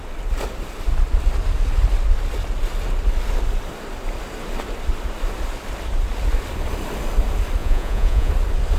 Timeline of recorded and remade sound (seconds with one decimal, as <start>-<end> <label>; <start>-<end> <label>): 0.0-7.6 recorded; 7.6-8.3 remade; 8.3-8.8 recorded